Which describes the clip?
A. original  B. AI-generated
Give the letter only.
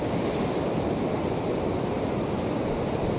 A